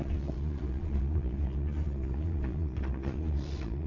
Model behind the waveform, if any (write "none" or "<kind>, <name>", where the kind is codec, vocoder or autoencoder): vocoder, Vocos